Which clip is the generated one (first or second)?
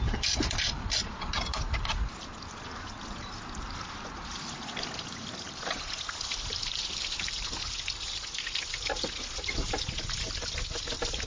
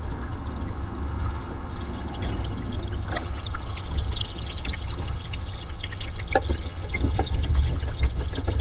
second